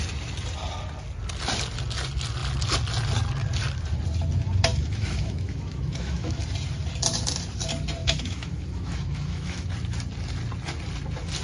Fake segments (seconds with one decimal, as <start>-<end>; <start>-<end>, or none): 4.7-6.4; 8.0-9.7

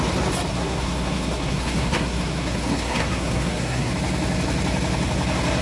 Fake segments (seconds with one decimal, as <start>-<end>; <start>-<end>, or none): 0.5-3.9

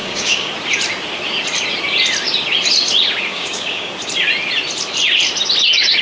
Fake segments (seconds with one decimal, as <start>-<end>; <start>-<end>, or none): 0.0-0.5; 3.3-3.9

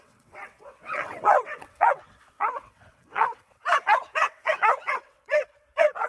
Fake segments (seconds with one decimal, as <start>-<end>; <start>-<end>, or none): 0.0-6.1

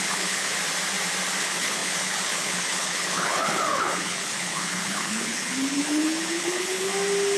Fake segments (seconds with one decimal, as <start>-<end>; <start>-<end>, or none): 0.0-0.5; 1.4-6.9

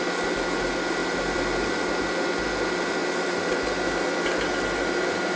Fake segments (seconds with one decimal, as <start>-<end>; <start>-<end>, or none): none

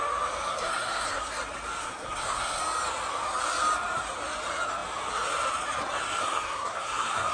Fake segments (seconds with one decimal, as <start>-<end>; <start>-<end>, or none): 0.5-1.3; 1.8-2.6; 6.2-7.3

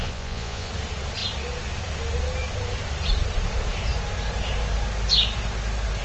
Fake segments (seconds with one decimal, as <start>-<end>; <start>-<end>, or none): 0.0-0.7